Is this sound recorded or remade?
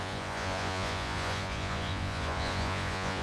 remade